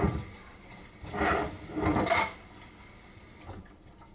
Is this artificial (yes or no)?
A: no